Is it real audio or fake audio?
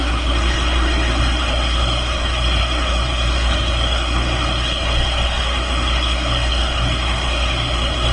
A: fake